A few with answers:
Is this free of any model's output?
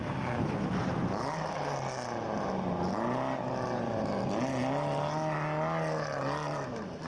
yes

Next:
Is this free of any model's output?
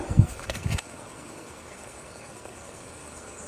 no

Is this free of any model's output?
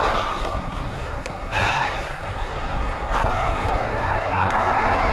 no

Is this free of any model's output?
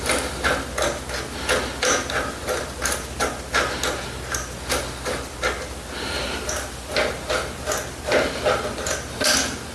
yes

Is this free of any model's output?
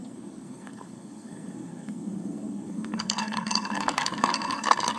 no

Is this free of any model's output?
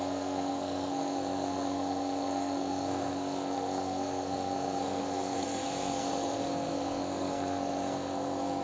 no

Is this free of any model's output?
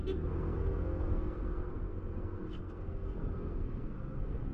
no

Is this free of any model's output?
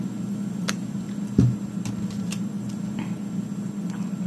yes